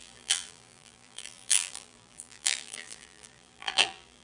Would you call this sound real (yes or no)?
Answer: no